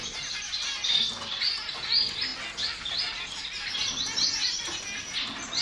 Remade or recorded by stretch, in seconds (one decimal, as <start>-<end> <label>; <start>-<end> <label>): 0.0-5.6 recorded

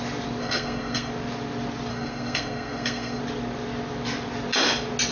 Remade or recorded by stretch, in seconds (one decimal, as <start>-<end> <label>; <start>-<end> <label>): 0.0-0.4 recorded; 0.4-1.1 remade; 1.1-1.9 recorded; 1.9-3.2 remade; 3.2-5.1 recorded

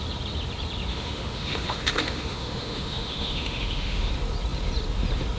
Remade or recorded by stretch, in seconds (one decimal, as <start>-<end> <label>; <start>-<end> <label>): 0.0-0.9 recorded; 0.9-4.1 remade; 4.1-5.4 recorded